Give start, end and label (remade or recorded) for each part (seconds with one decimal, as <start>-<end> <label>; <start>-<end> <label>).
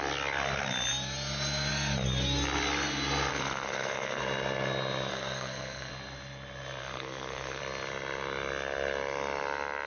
0.0-3.3 recorded; 3.3-4.2 remade; 4.2-5.1 recorded; 5.1-5.9 remade; 5.9-6.8 recorded; 6.8-7.6 remade; 7.6-9.9 recorded